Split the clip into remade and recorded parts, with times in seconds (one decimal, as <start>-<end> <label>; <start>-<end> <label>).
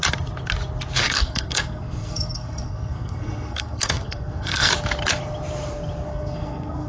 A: 0.0-1.0 recorded; 1.0-4.7 remade; 4.7-6.1 recorded; 6.1-6.9 remade